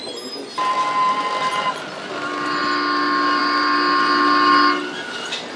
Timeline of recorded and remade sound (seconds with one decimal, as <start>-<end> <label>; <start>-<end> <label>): 0.0-5.6 recorded